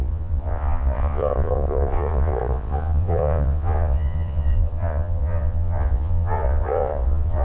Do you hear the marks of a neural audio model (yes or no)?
yes